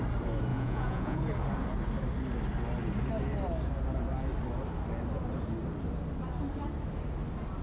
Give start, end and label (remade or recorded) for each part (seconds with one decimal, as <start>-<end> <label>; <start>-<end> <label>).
0.0-0.5 recorded; 0.5-1.2 remade; 1.2-7.6 recorded